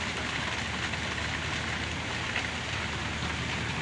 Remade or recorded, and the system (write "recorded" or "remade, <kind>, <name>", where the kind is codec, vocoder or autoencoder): recorded